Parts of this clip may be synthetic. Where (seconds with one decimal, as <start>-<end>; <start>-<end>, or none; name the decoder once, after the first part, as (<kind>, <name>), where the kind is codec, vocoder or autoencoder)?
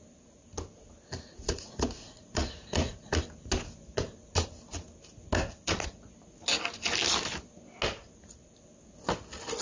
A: 1.3-3.2 (vocoder, Vocos)